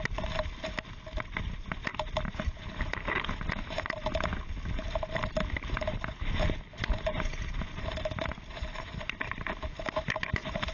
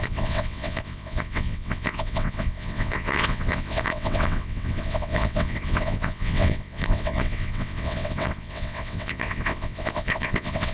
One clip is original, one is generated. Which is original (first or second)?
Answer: first